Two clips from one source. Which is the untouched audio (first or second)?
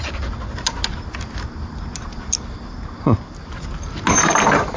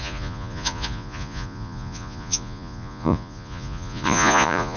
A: first